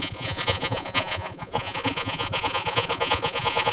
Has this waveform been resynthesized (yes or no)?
yes